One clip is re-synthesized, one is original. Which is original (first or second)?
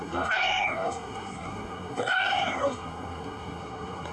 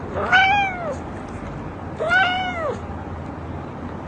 second